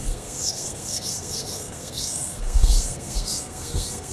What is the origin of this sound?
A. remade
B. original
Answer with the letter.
A